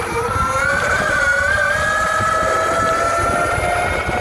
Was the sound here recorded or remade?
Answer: recorded